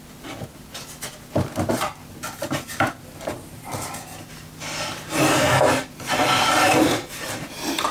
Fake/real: real